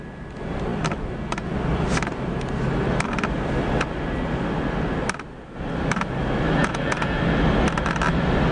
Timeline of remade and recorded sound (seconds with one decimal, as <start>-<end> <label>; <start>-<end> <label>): 0.0-6.6 recorded; 6.6-7.2 remade; 7.2-8.5 recorded